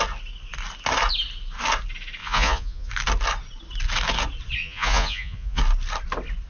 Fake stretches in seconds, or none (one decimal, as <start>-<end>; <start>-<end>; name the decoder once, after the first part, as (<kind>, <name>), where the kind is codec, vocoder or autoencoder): 2.2-2.9 (vocoder, Vocos); 4.6-5.6